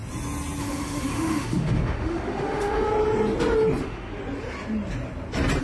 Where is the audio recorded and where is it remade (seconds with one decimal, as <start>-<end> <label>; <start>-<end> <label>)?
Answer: 0.0-0.6 recorded; 0.6-2.9 remade; 2.9-3.8 recorded; 3.8-4.2 remade; 4.2-5.6 recorded